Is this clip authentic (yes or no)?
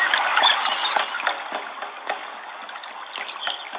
yes